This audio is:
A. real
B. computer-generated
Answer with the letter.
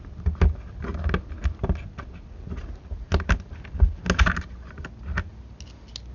A